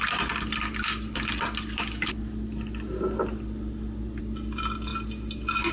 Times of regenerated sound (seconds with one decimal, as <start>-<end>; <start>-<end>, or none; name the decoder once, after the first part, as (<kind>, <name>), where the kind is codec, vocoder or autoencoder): none